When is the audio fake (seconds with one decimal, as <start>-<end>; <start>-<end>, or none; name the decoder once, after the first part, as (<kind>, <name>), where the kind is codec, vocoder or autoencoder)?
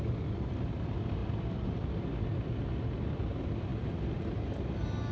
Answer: none